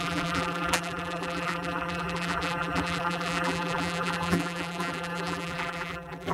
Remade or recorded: remade